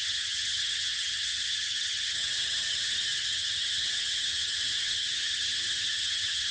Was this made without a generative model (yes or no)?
no